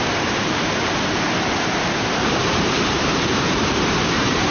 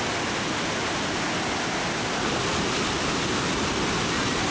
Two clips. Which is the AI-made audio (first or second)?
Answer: first